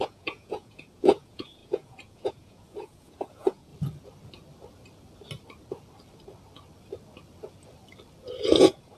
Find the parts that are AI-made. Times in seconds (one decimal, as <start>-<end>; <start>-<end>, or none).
0.0-3.7; 8.6-9.0